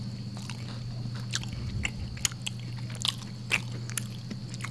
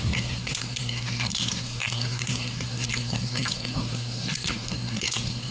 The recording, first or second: first